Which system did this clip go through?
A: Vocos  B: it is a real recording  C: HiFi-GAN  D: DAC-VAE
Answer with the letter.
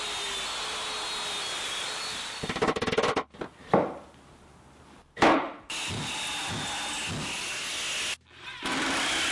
B